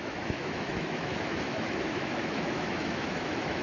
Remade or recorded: remade